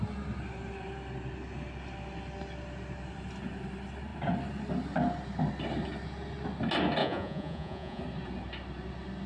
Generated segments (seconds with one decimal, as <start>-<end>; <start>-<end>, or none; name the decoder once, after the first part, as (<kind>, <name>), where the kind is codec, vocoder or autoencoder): 7.0-8.0 (vocoder, Vocos)